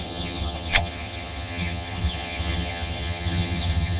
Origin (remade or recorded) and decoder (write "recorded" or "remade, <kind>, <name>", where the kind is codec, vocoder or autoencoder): remade, vocoder, HiFi-GAN